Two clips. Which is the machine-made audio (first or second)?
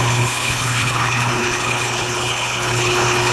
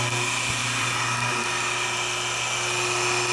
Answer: first